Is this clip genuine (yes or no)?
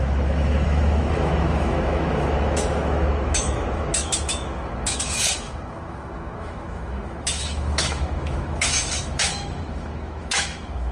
no